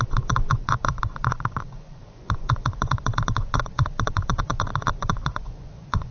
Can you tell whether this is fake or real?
fake